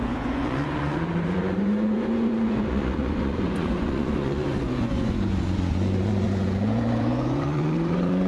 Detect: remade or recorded remade